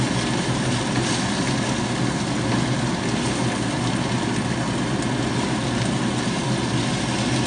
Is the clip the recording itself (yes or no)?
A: yes